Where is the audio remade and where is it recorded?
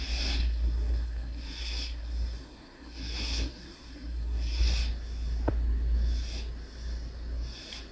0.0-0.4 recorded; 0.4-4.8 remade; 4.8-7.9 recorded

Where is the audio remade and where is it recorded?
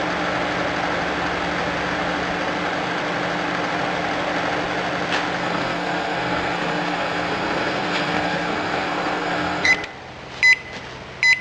0.0-5.4 recorded; 5.4-9.7 remade; 9.7-11.4 recorded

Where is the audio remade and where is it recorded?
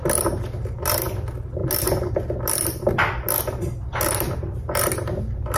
0.0-5.6 recorded